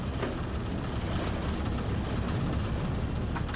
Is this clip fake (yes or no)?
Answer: no